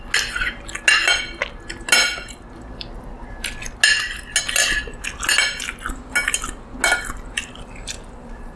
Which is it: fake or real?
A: real